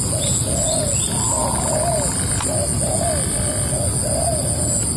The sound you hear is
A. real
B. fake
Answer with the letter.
A